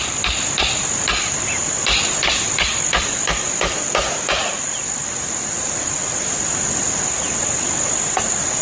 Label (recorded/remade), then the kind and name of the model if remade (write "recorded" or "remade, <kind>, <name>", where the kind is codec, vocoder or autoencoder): remade, vocoder, BigVGAN v2